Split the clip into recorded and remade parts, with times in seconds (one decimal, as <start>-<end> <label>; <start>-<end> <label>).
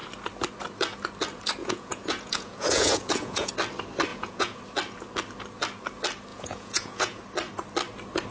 0.0-1.6 recorded; 1.6-3.5 remade; 3.5-4.1 recorded; 4.1-4.6 remade; 4.6-6.3 recorded; 6.3-7.2 remade; 7.2-8.3 recorded